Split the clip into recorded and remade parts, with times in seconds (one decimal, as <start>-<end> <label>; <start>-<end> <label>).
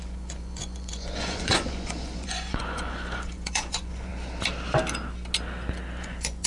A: 0.0-4.1 remade; 4.1-6.0 recorded; 6.0-6.5 remade